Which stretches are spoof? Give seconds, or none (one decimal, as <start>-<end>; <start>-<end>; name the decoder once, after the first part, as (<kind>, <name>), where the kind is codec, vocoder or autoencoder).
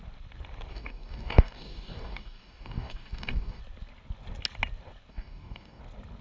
0.7-3.6 (codec, DAC); 5.1-5.8